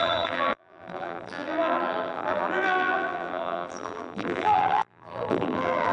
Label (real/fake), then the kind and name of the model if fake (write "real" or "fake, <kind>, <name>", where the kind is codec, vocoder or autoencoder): fake, vocoder, BigVGAN v2